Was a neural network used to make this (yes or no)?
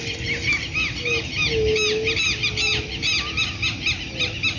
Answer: no